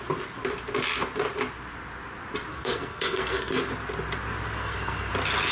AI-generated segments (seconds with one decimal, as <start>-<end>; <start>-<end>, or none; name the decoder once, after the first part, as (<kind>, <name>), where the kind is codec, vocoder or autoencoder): 2.5-3.6 (codec, SNAC); 4.6-5.1